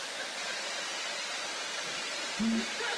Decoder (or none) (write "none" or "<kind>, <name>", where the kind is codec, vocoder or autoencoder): none